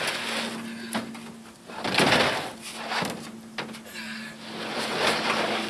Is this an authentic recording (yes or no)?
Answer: yes